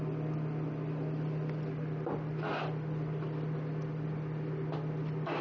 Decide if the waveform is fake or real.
real